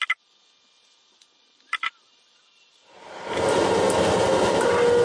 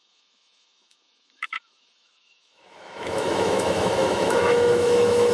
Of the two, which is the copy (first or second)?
second